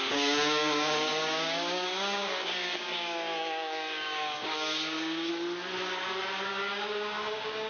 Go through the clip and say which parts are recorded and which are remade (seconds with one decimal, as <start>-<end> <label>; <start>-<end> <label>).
0.0-5.3 remade; 5.3-6.7 recorded; 6.7-7.7 remade